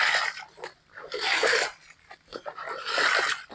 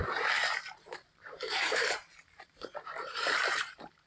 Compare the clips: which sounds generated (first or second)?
second